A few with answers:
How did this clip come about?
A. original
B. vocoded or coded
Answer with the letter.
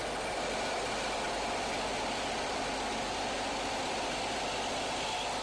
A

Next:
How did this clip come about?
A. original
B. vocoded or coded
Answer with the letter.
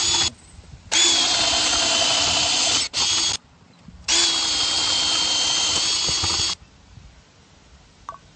A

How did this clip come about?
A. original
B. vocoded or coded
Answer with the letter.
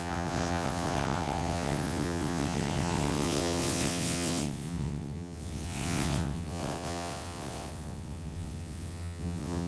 B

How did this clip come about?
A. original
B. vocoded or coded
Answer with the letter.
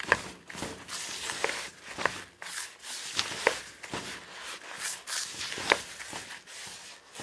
A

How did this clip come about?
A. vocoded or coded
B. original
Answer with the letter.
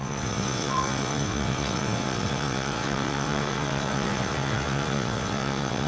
A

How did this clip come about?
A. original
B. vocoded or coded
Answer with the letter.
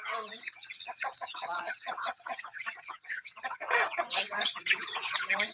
B